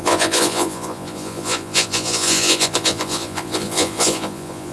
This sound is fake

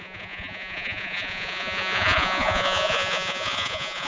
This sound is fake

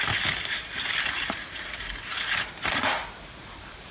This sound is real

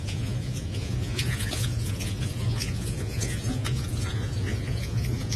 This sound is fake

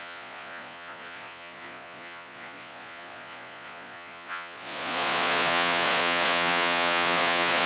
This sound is fake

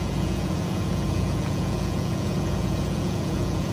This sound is fake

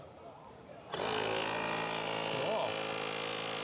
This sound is real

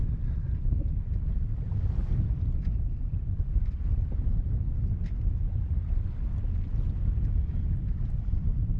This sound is real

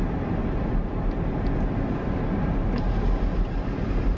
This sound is real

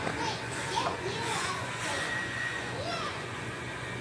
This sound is fake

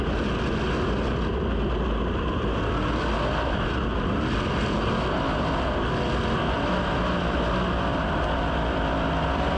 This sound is real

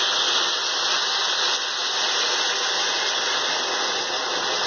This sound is real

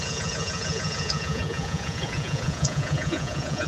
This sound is fake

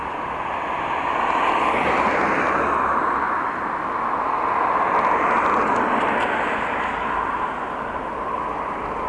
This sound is real